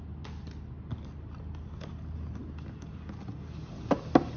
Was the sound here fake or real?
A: real